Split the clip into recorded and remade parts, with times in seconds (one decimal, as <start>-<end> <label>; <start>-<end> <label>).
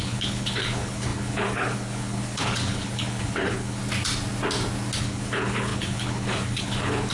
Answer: 0.0-3.8 remade; 3.8-5.0 recorded; 5.0-7.1 remade